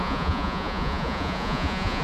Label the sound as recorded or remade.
remade